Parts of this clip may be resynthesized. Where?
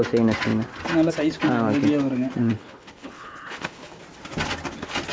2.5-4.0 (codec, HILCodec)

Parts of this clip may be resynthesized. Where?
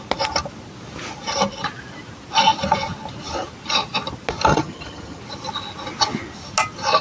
4.5-5.2 (vocoder, HiFi-GAN)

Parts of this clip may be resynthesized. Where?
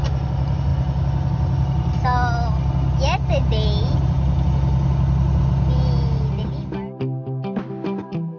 none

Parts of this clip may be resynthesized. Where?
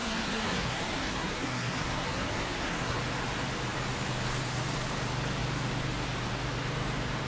0.0-3.0 (codec, SNAC)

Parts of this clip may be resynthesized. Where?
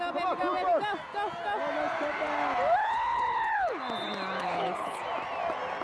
2.8-3.8 (codec, HILCodec); 4.4-5.0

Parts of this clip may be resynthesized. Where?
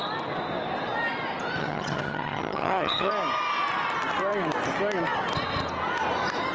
1.6-3.1 (vocoder, HiFi-GAN)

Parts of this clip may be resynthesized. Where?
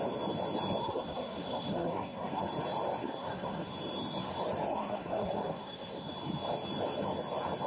0.8-2.4 (codec, SNAC); 3.0-3.7; 4.7-6.1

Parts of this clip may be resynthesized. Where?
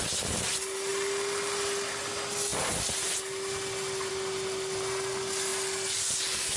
none